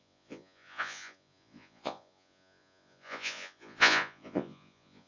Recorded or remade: remade